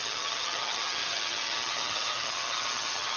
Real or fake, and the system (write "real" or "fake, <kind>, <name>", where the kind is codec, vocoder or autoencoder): fake, vocoder, HiFi-GAN